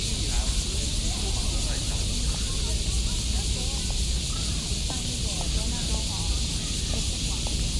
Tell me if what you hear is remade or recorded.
recorded